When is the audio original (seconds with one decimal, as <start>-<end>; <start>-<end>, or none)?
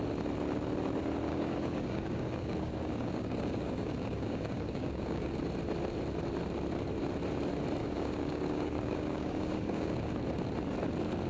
0.0-1.3; 5.4-7.8; 10.1-11.3